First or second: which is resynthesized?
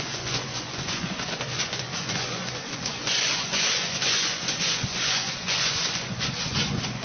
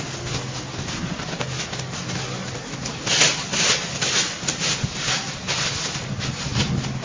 first